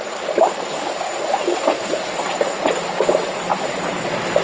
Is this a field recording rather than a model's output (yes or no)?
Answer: yes